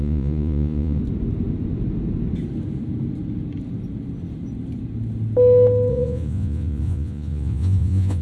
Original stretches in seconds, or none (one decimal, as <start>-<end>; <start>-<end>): 1.0-5.9